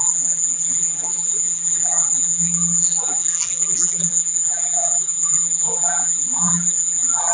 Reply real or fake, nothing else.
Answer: fake